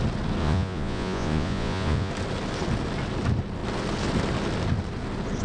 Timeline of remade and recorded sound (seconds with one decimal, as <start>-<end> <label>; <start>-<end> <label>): 0.0-0.4 recorded; 0.4-2.1 remade; 2.1-5.4 recorded